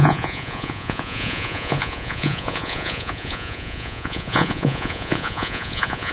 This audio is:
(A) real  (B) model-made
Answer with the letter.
B